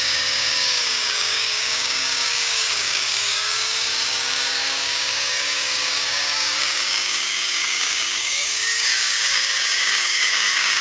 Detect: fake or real fake